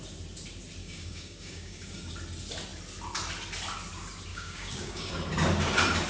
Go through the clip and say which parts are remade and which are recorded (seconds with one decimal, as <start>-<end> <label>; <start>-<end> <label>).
0.0-0.8 recorded; 0.8-2.1 remade; 2.1-4.3 recorded; 4.3-5.1 remade; 5.1-6.1 recorded